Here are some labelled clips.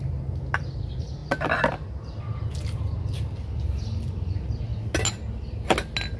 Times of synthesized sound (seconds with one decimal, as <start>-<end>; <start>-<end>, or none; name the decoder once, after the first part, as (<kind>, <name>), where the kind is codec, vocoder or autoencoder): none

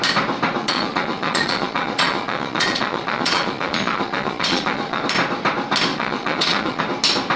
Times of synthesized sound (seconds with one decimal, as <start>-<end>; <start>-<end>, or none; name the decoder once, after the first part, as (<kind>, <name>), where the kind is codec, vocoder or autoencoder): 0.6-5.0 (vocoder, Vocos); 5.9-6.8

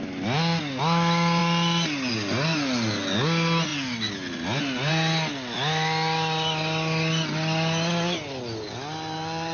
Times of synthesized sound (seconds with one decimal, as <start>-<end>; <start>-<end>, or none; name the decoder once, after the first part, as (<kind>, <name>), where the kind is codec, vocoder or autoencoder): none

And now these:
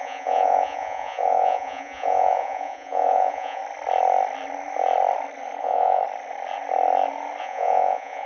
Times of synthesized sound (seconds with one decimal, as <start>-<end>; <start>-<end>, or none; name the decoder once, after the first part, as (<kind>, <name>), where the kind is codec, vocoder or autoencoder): 0.0-3.6 (vocoder, Vocos); 5.6-6.0; 7.4-8.3